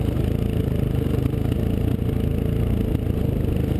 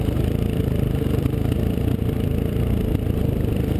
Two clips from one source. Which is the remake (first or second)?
second